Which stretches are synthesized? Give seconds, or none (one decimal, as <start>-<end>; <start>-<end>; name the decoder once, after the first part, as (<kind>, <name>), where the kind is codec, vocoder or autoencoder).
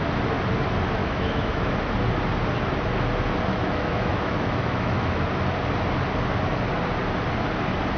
1.0-1.7 (autoencoder, DAC-VAE); 3.5-5.3